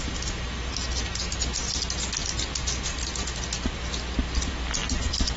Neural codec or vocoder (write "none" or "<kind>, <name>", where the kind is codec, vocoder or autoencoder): none